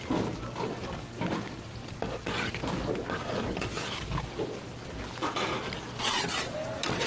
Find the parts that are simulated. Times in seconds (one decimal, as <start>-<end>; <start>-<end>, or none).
none